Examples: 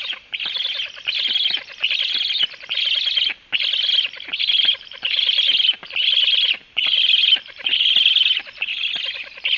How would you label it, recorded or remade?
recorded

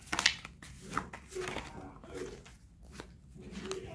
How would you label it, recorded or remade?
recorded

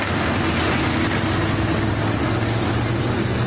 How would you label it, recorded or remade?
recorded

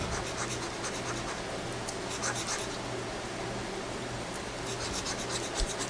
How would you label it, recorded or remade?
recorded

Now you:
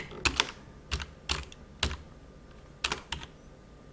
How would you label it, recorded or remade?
recorded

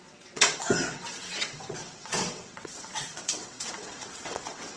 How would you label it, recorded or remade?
remade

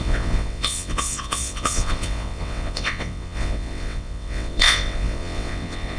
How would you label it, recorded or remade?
remade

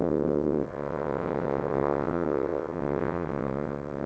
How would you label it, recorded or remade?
remade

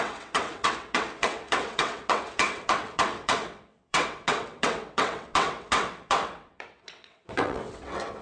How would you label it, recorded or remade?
remade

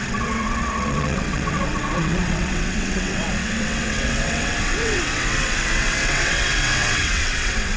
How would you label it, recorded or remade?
remade